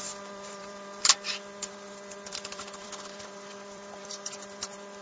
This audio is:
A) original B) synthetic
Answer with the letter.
B